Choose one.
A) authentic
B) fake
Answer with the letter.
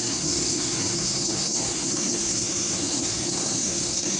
B